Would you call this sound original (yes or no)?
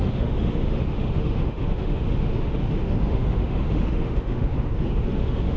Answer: no